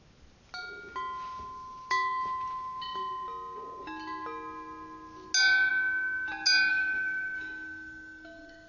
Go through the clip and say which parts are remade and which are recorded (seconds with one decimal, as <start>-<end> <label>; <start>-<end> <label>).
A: 0.0-6.7 recorded; 6.7-8.7 remade